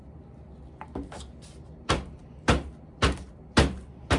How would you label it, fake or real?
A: real